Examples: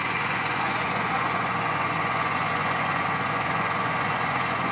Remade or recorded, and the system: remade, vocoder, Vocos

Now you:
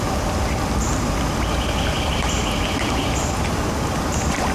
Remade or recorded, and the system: recorded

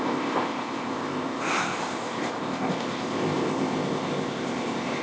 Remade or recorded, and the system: remade, codec, ZipCodec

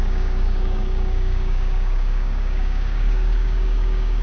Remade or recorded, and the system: remade, codec, DAC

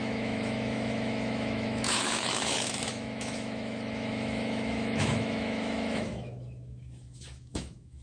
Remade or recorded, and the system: remade, autoencoder, DAC-VAE